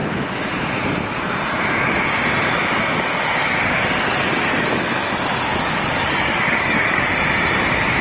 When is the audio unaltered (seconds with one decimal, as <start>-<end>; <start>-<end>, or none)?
0.0-5.5; 7.1-8.0